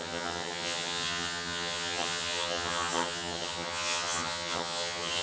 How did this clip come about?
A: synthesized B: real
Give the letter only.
A